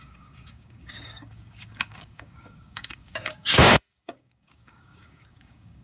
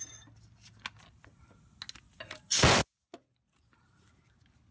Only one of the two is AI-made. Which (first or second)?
first